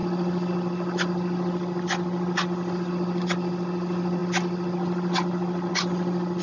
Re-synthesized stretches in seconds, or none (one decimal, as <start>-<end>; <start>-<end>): none